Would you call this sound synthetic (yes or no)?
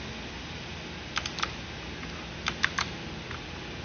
no